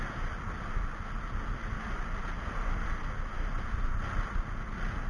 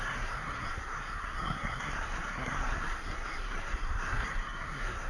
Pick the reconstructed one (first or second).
second